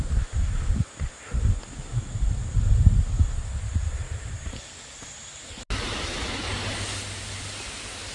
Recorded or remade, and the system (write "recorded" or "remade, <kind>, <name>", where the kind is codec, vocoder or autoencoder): recorded